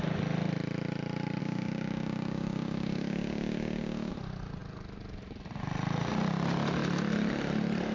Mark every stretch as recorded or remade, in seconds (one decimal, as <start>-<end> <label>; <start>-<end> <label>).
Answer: 0.0-1.4 recorded; 1.4-4.1 remade; 4.1-7.9 recorded